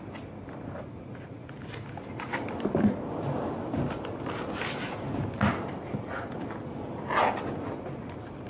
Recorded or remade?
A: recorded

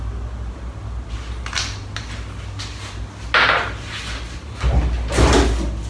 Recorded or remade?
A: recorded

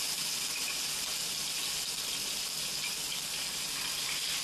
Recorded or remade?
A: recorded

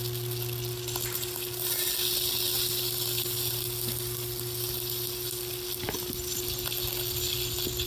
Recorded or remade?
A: recorded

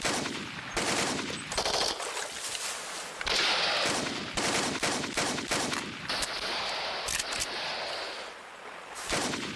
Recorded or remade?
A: recorded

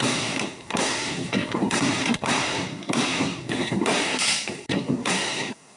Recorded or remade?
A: remade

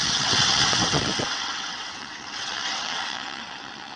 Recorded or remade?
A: remade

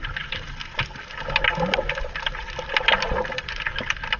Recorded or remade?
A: recorded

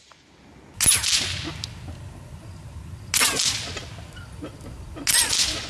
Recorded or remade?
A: recorded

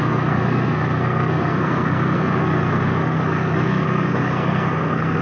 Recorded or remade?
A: remade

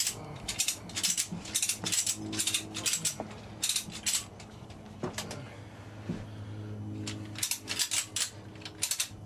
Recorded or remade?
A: recorded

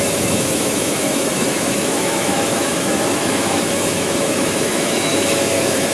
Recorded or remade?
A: remade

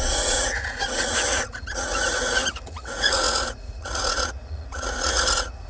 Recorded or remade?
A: remade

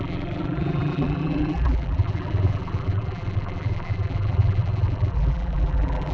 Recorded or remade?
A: remade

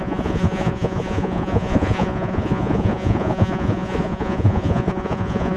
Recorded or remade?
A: remade